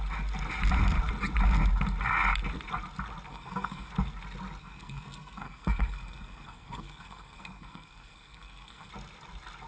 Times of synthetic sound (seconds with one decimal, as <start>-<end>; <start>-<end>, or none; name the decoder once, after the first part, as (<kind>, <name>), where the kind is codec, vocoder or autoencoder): 3.3-3.9 (codec, SNAC); 4.6-8.9